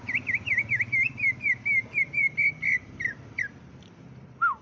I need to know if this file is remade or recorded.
remade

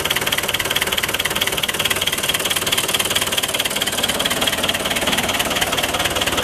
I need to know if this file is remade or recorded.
recorded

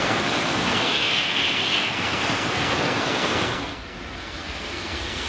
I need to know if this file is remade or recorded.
remade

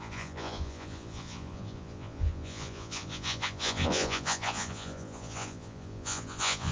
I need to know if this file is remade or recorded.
remade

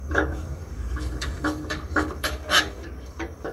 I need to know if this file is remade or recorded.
remade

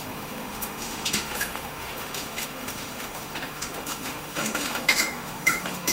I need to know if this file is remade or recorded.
remade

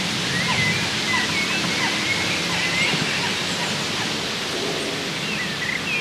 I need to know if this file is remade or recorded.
recorded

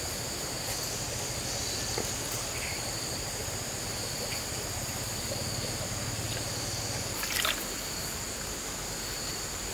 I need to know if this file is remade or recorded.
recorded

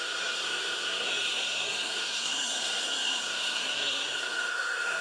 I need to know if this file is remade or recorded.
remade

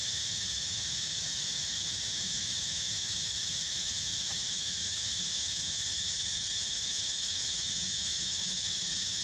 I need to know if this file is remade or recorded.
remade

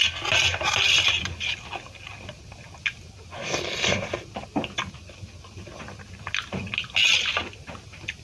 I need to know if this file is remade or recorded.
recorded